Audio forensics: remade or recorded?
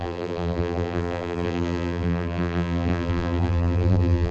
remade